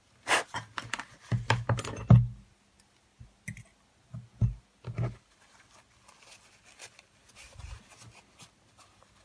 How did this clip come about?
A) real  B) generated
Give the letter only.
A